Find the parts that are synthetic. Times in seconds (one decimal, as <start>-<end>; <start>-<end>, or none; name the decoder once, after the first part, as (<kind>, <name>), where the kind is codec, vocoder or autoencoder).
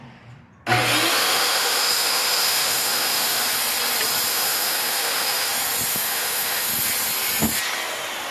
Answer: 1.2-3.4 (autoencoder, DAC-VAE); 4.3-5.5; 5.9-6.7